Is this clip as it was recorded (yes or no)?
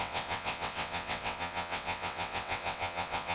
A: no